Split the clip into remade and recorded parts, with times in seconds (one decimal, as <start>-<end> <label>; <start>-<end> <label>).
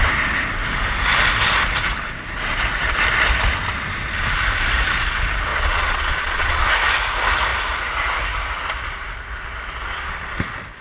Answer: 0.0-5.5 recorded; 5.5-6.6 remade; 6.6-9.9 recorded; 9.9-10.4 remade; 10.4-10.8 recorded